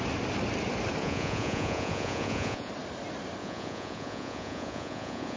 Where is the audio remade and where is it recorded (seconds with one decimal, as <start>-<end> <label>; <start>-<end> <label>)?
0.0-1.0 recorded; 1.0-2.7 remade; 2.7-3.4 recorded; 3.4-5.4 remade